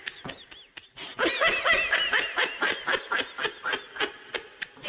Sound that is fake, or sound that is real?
real